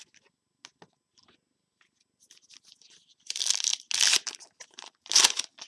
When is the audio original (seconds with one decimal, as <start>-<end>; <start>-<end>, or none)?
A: 0.0-5.7